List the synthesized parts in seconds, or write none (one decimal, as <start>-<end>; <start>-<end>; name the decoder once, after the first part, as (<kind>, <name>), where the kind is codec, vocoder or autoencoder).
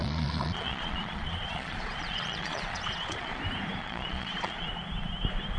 0.0-3.4 (vocoder, Vocos); 3.8-4.7